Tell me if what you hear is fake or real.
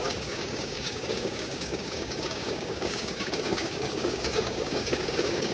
fake